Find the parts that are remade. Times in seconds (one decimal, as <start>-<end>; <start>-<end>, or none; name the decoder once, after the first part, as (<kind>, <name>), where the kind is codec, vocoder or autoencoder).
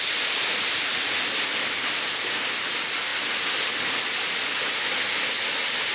none